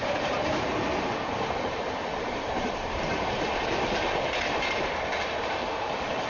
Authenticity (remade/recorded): remade